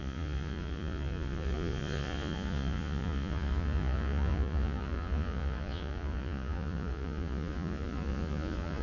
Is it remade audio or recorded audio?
remade